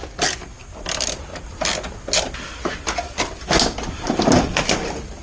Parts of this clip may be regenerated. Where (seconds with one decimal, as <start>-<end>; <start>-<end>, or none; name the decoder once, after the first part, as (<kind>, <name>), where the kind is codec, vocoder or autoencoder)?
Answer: none